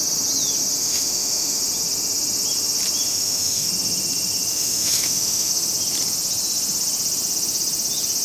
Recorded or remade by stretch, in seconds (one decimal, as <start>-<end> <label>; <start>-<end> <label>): 0.0-0.8 recorded; 0.8-1.6 remade; 1.6-3.1 recorded; 3.1-3.7 remade; 3.7-4.5 recorded; 4.5-5.5 remade; 5.5-8.2 recorded